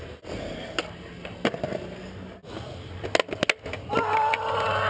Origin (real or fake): real